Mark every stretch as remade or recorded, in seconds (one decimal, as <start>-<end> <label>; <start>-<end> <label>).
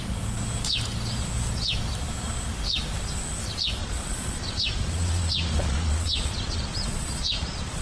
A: 0.0-3.8 recorded; 3.8-7.8 remade